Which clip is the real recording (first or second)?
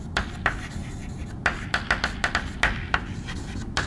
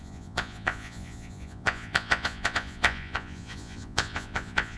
first